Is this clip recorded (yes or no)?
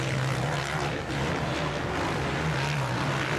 yes